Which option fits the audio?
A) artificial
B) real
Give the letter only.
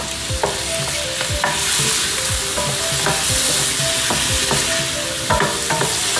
B